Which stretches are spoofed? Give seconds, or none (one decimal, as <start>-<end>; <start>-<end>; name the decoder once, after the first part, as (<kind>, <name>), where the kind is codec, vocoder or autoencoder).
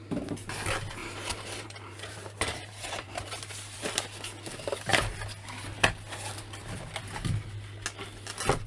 1.0-4.0 (vocoder, BigVGAN v2)